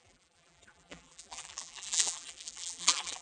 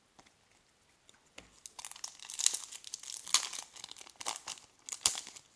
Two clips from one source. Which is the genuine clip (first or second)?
second